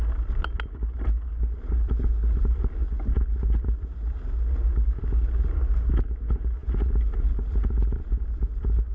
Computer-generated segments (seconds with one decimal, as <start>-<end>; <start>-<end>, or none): none